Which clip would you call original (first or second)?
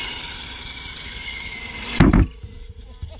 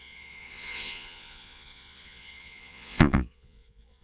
first